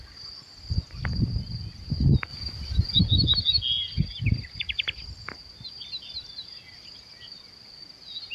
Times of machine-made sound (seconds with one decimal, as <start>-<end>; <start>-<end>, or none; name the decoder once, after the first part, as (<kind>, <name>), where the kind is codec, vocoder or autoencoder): 3.8-4.9 (vocoder, BigVGAN v2)